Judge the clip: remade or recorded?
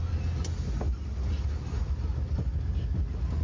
recorded